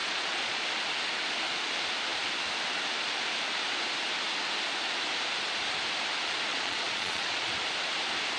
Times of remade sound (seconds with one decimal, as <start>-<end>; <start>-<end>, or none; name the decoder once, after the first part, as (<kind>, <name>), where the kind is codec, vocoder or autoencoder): 0.0-0.6 (vocoder, Vocos); 6.5-7.5